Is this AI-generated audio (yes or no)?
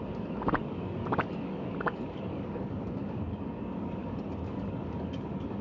yes